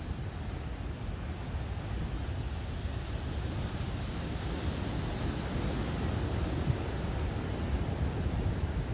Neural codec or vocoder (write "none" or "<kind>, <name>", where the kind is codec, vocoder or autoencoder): none